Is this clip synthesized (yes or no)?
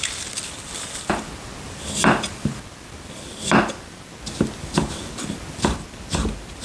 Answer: no